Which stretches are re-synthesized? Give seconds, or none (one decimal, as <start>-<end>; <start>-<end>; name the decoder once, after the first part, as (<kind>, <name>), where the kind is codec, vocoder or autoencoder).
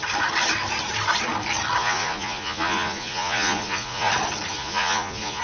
1.8-4.1 (vocoder, Vocos); 4.5-5.4